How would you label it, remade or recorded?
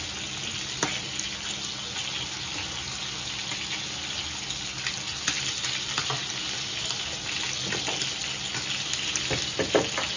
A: recorded